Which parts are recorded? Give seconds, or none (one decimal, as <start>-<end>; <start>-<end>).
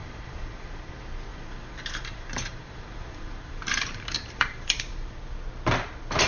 0.9-1.3; 5.1-6.3